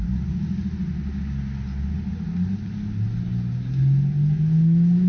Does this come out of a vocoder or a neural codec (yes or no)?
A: no